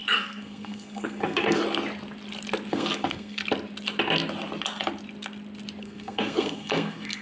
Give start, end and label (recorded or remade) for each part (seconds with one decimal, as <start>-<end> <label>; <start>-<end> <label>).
0.0-1.6 remade; 1.6-2.7 recorded; 2.7-3.4 remade; 3.4-5.8 recorded; 5.8-7.2 remade

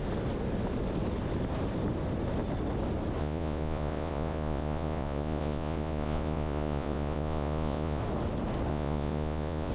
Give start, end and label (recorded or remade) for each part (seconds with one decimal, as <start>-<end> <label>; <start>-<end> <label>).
0.0-3.2 recorded; 3.2-8.0 remade; 8.0-8.7 recorded; 8.7-9.7 remade

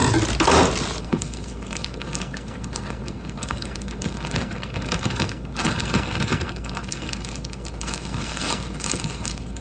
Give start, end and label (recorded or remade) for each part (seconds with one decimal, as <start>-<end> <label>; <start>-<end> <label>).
0.0-1.0 recorded; 1.0-9.6 remade

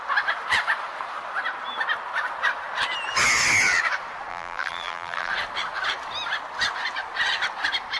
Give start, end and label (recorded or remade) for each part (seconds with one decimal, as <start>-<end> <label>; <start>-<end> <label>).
0.0-4.3 recorded; 4.3-5.3 remade; 5.3-8.0 recorded

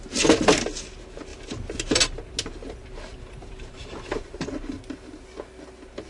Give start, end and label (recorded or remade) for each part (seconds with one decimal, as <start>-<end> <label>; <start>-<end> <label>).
0.0-3.1 recorded; 3.1-4.5 remade; 4.5-6.1 recorded

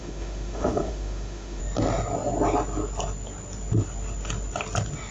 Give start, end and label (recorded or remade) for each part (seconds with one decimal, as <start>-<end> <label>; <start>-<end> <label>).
0.0-1.6 remade; 1.6-5.1 recorded

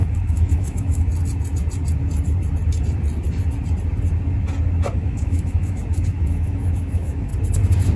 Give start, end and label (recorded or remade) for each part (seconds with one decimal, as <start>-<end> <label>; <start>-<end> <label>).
0.0-1.1 remade; 1.1-4.9 recorded; 4.9-7.3 remade; 7.3-8.0 recorded

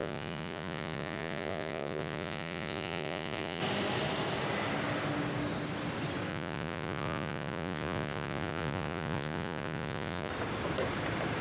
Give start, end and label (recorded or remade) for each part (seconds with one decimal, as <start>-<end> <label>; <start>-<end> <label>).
0.0-3.6 remade; 3.6-6.3 recorded; 6.3-10.3 remade; 10.3-11.4 recorded